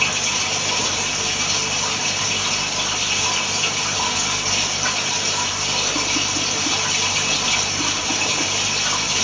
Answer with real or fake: real